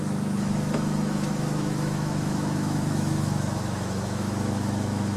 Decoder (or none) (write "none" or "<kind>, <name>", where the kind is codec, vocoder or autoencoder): autoencoder, DAC-VAE